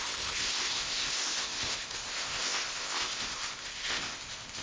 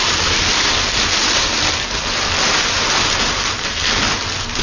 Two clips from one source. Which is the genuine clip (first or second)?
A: second